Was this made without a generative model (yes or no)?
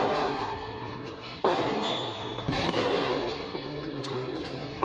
no